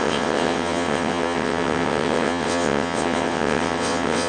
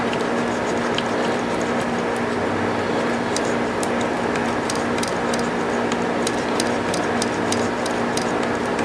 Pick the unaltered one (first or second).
second